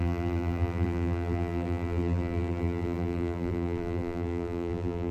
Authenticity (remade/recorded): remade